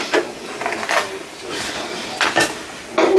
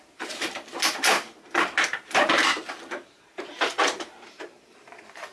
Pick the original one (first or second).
first